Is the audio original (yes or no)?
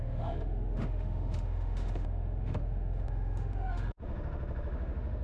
no